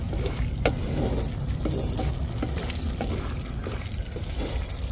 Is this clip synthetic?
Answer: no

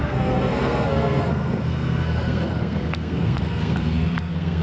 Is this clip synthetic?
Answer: yes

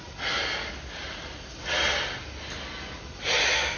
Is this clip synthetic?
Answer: no